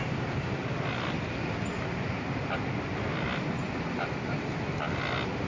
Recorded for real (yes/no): yes